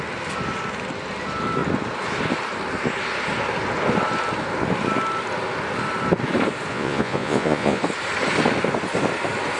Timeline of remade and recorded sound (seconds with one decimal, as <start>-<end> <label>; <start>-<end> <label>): 0.0-6.7 recorded; 6.7-7.8 remade; 7.8-9.6 recorded